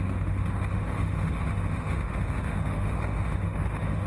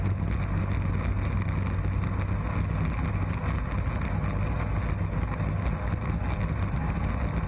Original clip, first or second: second